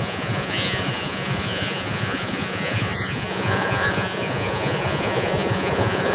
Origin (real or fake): fake